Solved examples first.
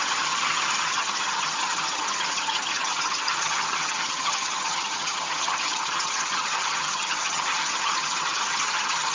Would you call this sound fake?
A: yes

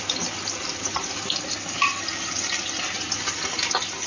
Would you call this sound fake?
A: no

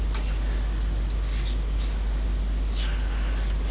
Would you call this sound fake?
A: no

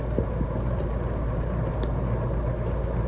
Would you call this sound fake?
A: no